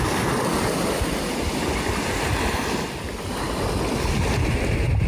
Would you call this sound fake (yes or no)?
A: no